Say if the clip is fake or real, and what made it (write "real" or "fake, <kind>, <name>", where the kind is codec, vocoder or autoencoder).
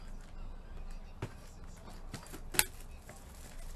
real